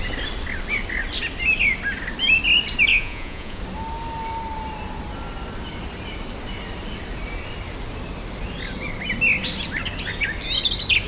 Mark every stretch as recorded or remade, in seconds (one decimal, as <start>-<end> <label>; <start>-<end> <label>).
0.0-2.9 recorded; 2.9-3.6 remade; 3.6-11.1 recorded